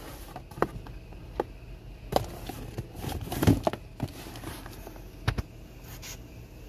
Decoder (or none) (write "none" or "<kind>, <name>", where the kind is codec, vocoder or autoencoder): none